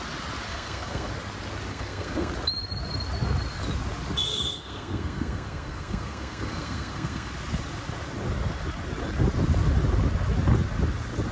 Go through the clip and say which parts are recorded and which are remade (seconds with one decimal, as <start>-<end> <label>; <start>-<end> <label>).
0.0-0.5 recorded; 0.5-1.1 remade; 1.1-1.7 recorded; 1.7-2.3 remade; 2.3-4.3 recorded; 4.3-7.3 remade; 7.3-11.3 recorded